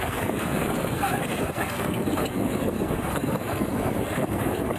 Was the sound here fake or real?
fake